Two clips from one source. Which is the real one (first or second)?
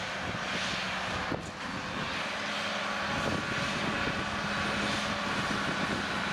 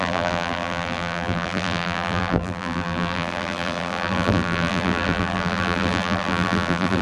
first